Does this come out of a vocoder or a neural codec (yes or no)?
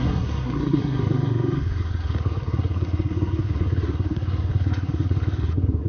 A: yes